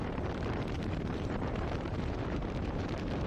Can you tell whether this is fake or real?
fake